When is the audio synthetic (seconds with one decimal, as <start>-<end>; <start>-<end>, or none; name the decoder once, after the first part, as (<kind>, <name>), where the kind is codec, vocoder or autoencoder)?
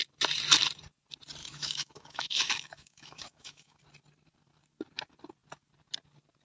1.4-3.8 (autoencoder, DAC-VAE)